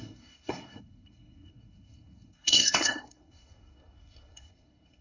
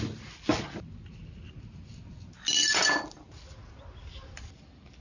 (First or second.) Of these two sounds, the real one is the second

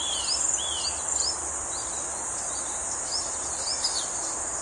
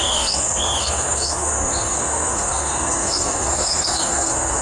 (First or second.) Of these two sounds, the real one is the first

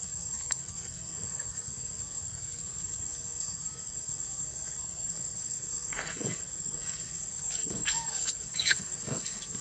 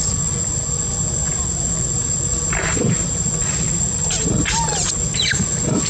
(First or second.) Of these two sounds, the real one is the second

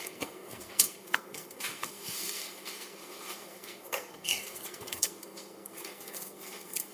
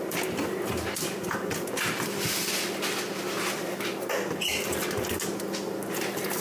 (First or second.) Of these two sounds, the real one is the second